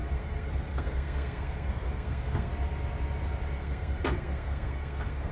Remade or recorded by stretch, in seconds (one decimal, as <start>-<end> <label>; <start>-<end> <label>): 0.0-2.5 remade; 2.5-3.6 recorded; 3.6-5.3 remade